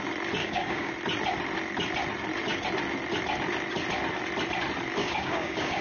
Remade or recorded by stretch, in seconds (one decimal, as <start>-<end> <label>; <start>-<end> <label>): 0.0-0.4 recorded; 0.4-0.9 remade; 0.9-5.0 recorded; 5.0-5.8 remade